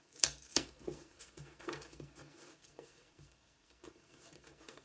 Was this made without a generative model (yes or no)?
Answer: no